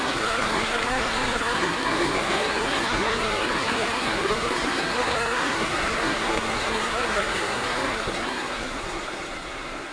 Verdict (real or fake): fake